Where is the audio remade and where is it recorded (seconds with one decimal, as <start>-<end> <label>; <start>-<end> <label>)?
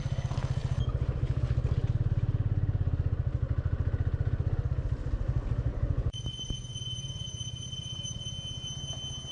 0.0-5.7 recorded; 5.7-8.2 remade; 8.2-9.3 recorded